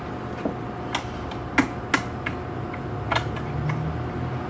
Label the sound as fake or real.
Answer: real